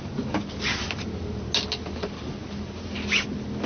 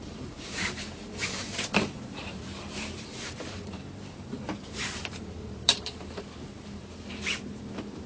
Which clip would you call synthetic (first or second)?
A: second